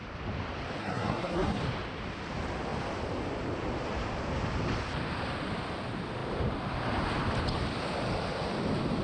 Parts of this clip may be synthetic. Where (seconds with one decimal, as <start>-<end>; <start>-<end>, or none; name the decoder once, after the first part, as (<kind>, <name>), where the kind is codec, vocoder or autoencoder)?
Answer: 0.8-1.6 (codec, SNAC)